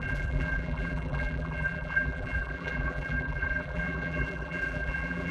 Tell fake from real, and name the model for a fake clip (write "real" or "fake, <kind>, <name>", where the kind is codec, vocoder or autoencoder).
fake, vocoder, BigVGAN v2